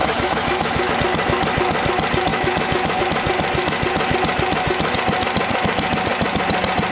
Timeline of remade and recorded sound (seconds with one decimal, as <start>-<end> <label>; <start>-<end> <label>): 0.0-0.9 remade; 0.9-2.3 recorded; 2.3-3.0 remade; 3.0-6.9 recorded